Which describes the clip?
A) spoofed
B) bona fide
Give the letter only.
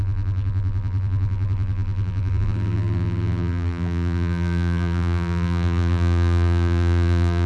A